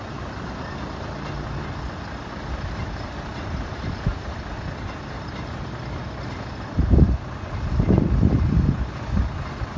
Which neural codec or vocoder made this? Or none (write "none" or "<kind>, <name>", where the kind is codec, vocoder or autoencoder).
none